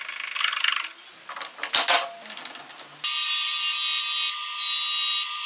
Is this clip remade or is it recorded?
recorded